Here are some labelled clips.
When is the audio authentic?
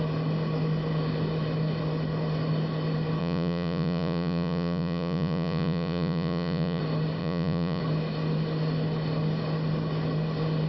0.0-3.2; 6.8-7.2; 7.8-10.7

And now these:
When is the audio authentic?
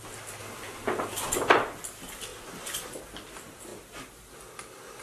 0.0-0.4; 1.5-5.0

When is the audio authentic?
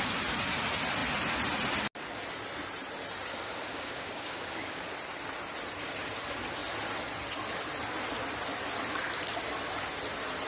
0.0-3.7; 4.9-10.5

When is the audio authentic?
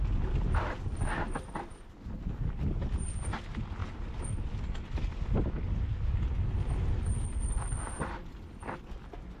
0.0-9.4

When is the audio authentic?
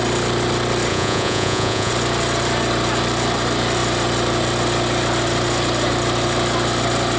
0.0-0.9; 1.9-7.2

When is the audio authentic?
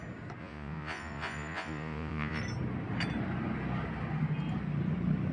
0.0-0.4; 2.4-5.3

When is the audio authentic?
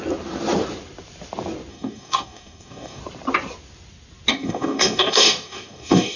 0.0-1.7; 3.0-4.3